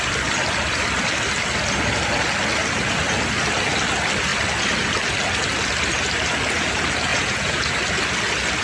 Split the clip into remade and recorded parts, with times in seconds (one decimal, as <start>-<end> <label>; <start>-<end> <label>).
0.0-7.1 recorded; 7.1-7.7 remade; 7.7-8.6 recorded